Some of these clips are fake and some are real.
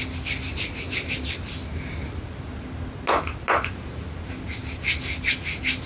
real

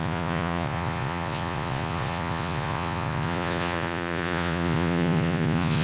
fake